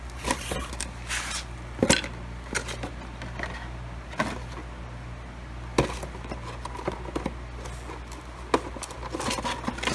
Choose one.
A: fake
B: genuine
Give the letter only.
B